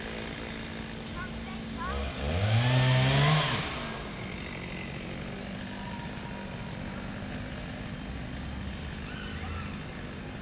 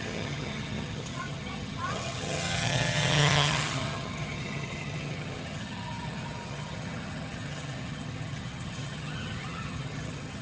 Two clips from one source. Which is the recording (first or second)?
first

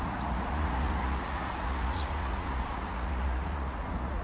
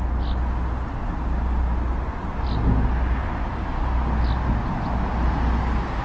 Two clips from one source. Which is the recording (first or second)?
second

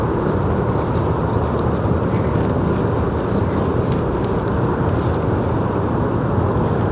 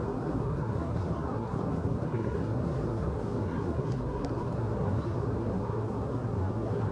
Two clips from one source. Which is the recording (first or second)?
first